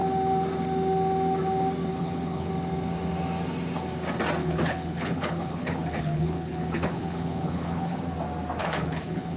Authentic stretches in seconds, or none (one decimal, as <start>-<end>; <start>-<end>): 0.0-1.9; 2.5-4.4; 8.0-8.6